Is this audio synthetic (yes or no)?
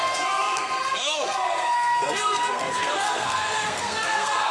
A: yes